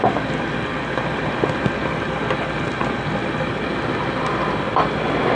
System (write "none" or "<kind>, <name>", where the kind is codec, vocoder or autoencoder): none